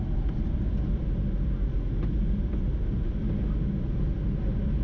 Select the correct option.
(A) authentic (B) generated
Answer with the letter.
A